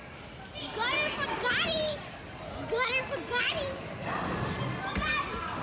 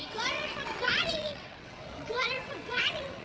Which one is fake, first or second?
second